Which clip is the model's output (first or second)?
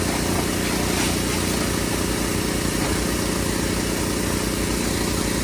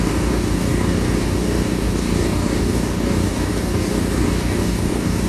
second